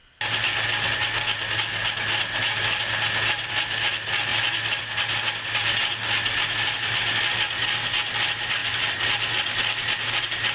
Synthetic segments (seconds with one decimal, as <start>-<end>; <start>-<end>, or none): none